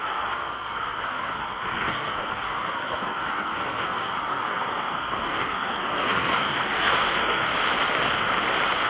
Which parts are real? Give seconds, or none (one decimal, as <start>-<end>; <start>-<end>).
7.5-8.9